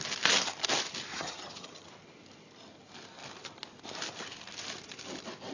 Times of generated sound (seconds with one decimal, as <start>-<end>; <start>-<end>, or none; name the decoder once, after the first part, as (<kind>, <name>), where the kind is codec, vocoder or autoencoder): 1.1-1.9 (vocoder, HiFi-GAN)